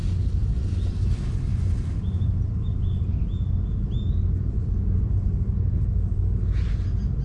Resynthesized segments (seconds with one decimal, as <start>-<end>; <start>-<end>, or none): none